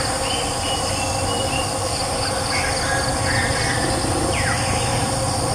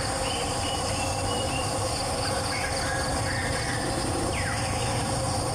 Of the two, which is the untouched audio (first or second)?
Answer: first